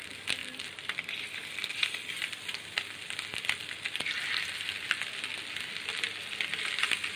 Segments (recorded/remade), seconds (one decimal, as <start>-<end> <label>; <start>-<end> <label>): 0.0-0.4 recorded; 0.4-1.2 remade; 1.2-2.2 recorded; 2.2-6.5 remade; 6.5-7.2 recorded